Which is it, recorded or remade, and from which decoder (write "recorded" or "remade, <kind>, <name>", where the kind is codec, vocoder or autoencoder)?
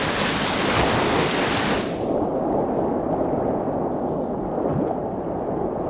recorded